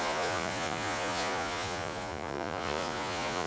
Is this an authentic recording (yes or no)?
no